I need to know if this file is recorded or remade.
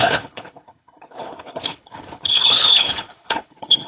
remade